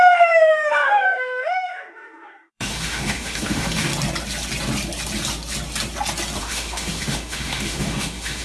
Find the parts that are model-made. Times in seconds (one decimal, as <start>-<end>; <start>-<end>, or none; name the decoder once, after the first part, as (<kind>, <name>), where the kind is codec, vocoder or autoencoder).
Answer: 0.0-3.9 (autoencoder, DAC-VAE); 6.4-8.4